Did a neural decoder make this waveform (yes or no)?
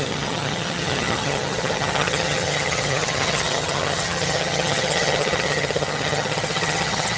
yes